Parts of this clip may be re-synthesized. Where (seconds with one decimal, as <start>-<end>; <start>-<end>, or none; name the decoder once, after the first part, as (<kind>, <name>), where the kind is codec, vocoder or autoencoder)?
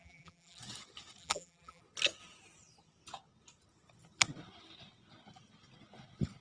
0.0-0.6 (vocoder, BigVGAN v2); 1.2-1.8